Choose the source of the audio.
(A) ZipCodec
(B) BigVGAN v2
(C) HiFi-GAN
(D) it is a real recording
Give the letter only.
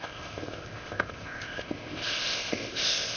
A